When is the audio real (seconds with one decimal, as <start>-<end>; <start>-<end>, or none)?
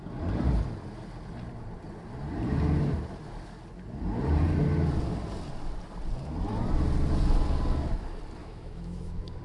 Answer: 0.0-8.4